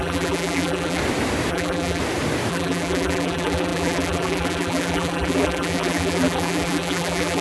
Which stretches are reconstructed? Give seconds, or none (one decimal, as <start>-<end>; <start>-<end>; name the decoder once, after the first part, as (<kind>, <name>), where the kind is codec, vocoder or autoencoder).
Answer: 0.0-1.0 (vocoder, BigVGAN v2); 1.5-2.0; 2.5-7.4